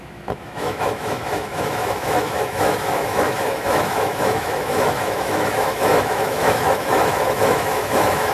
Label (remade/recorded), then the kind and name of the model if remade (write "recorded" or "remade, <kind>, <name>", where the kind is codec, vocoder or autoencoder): remade, autoencoder, DAC-VAE